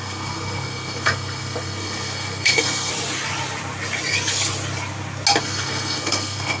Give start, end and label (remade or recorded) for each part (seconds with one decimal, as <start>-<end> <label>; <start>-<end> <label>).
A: 0.0-2.9 remade; 2.9-5.4 recorded; 5.4-6.6 remade